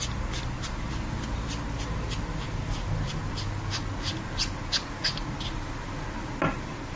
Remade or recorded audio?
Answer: recorded